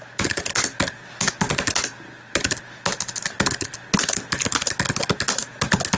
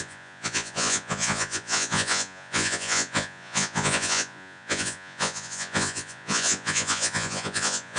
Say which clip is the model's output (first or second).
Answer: second